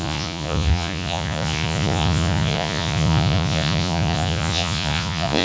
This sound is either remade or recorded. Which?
remade